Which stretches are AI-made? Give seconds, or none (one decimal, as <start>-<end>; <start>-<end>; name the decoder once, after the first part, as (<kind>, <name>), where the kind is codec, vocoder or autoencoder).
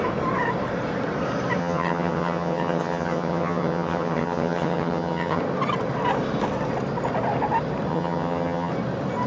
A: 1.6-5.4 (vocoder, HiFi-GAN); 7.9-8.7